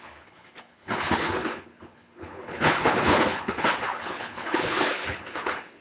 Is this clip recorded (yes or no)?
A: no